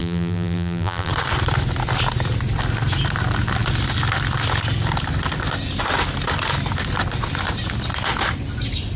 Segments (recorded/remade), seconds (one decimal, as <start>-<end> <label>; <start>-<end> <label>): 0.0-1.1 remade; 1.1-9.0 recorded